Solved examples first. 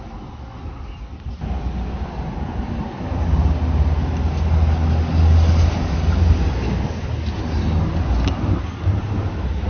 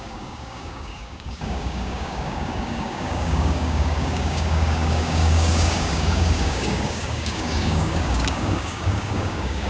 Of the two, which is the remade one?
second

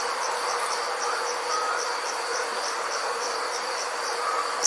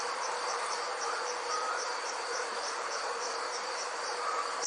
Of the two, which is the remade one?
second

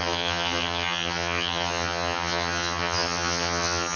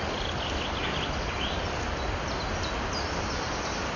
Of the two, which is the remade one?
first